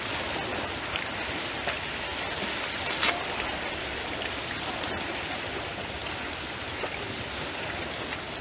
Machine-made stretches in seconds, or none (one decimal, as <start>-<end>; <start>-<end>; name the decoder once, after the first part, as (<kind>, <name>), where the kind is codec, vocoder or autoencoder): 0.0-2.1 (vocoder, BigVGAN v2); 2.9-8.4